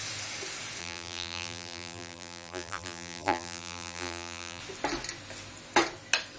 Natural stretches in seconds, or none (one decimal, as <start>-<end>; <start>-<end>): 0.0-0.8; 4.6-6.4